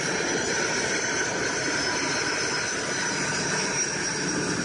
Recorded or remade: recorded